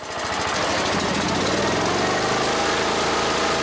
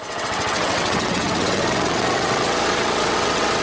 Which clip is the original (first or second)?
first